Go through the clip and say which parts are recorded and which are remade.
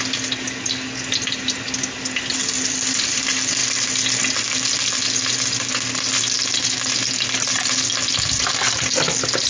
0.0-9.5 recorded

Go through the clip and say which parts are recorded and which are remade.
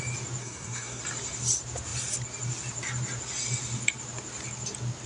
0.0-0.4 recorded; 0.4-1.0 remade; 1.0-5.1 recorded